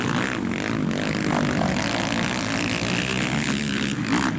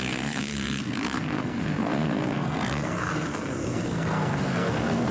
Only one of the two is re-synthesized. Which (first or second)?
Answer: second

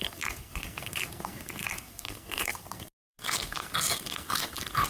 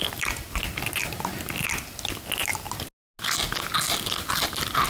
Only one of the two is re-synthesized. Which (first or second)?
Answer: first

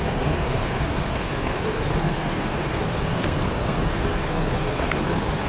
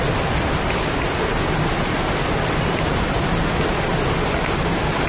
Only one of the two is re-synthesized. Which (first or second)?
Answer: first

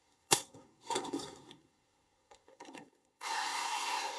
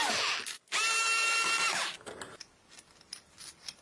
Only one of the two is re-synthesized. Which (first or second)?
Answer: first